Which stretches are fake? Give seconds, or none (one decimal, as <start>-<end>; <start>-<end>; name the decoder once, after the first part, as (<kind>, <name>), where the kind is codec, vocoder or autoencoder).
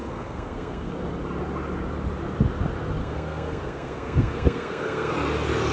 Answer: 0.0-0.9 (codec, SNAC); 3.0-5.1